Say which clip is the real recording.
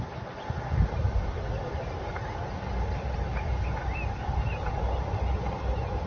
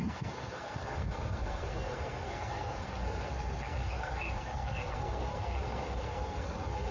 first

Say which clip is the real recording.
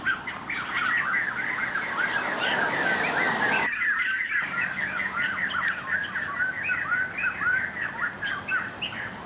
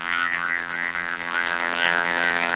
first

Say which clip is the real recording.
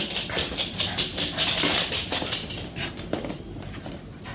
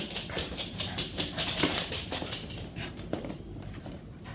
first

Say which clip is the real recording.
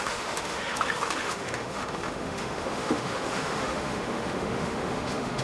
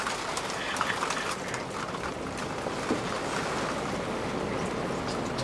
second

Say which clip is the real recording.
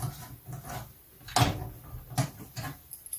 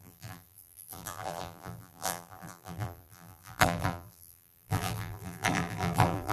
first